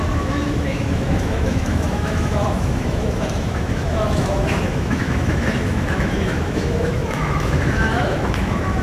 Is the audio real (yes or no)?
no